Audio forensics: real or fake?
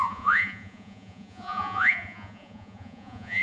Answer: fake